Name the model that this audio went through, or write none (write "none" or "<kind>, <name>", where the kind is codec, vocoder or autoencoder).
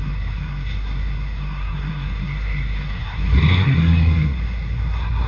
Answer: codec, SNAC